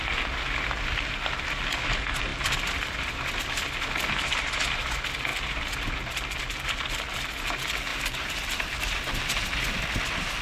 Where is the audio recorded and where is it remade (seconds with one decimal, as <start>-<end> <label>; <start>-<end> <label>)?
0.0-7.9 recorded; 7.9-9.0 remade; 9.0-10.4 recorded